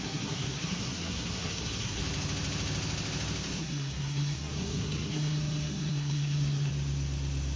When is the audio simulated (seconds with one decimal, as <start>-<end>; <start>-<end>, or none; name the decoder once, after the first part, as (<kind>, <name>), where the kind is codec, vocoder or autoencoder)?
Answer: 0.0-2.0 (codec, SNAC); 3.6-6.7